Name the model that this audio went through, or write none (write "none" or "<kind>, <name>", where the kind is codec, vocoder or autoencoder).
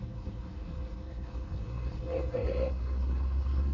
codec, SNAC